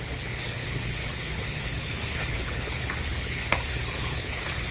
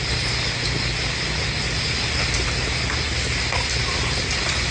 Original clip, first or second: second